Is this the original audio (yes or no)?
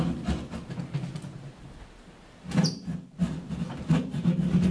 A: yes